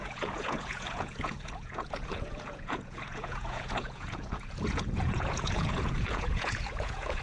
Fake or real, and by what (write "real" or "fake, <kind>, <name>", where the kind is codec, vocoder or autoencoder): fake, vocoder, Vocos